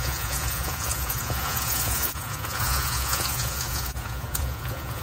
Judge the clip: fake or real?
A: fake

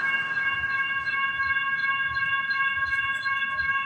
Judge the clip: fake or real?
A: fake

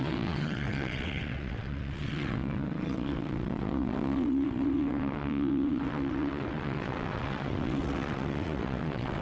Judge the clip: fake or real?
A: fake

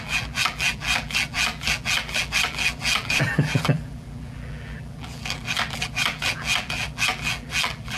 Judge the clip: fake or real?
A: fake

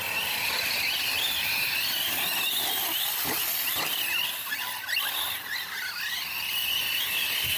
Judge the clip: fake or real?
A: real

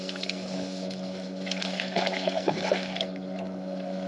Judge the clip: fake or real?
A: fake